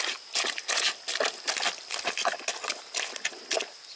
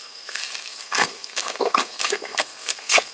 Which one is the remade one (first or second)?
second